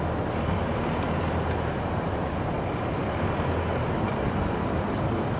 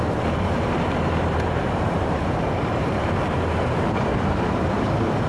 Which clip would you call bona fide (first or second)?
first